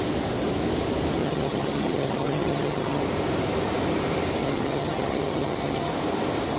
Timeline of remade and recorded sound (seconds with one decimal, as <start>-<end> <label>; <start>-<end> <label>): 0.0-1.2 recorded; 1.2-3.0 remade; 3.0-4.4 recorded; 4.4-5.9 remade; 5.9-6.6 recorded